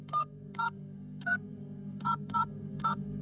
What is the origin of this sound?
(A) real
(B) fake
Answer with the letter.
B